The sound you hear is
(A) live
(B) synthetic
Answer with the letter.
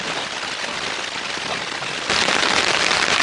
A